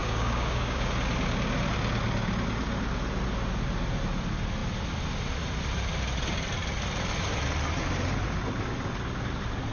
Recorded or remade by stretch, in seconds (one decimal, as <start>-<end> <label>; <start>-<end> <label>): 0.0-0.9 remade; 0.9-9.7 recorded